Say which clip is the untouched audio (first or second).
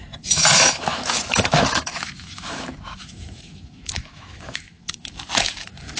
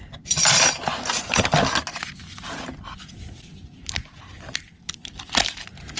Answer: second